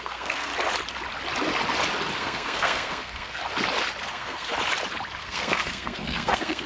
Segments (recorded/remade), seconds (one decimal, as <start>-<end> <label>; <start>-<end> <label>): 0.0-0.5 remade; 0.5-2.2 recorded; 2.2-3.4 remade; 3.4-4.1 recorded; 4.1-4.5 remade; 4.5-5.2 recorded; 5.2-6.7 remade